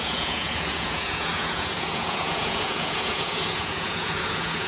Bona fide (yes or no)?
no